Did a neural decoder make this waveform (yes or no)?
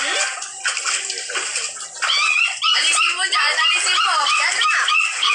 no